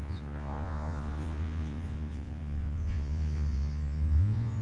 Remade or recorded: remade